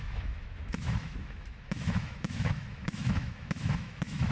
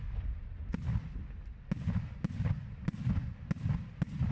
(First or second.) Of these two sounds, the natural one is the second